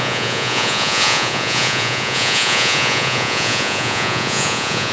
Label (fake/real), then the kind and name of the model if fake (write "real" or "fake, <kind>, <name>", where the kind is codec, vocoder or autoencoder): fake, vocoder, Vocos